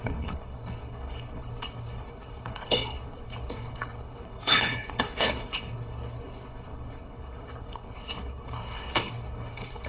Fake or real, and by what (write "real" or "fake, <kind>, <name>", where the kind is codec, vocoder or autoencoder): fake, codec, HILCodec